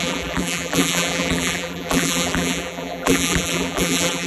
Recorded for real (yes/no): no